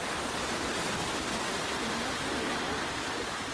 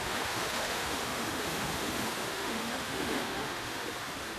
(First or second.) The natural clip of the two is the first